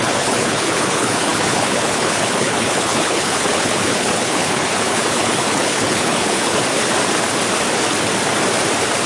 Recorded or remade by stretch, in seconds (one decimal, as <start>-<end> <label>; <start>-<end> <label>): 0.0-6.6 remade; 6.6-9.1 recorded

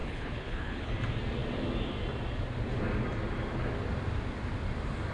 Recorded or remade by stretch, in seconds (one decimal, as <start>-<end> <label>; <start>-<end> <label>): 0.0-0.9 remade; 0.9-5.1 recorded

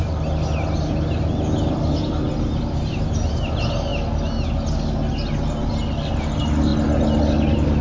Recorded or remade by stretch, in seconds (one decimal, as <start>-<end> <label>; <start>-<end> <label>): 0.0-7.8 recorded

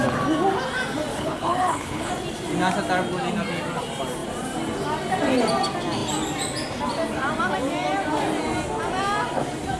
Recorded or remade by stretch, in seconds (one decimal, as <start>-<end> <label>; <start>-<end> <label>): 0.0-1.1 recorded; 1.1-2.1 remade; 2.1-9.8 recorded